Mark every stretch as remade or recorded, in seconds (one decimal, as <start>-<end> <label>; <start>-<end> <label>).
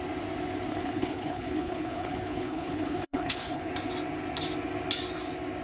0.0-0.7 recorded; 0.7-3.7 remade; 3.7-5.6 recorded